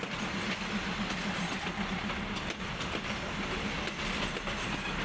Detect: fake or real real